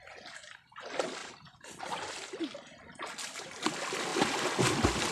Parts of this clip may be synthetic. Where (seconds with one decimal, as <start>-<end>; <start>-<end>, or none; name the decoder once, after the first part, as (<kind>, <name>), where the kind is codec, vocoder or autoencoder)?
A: 1.2-1.8 (vocoder, BigVGAN v2)